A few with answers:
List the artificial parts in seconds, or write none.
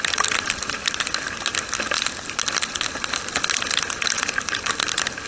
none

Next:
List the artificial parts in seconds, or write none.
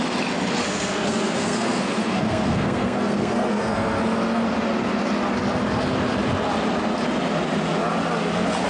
0.6-4.0 (codec, SNAC)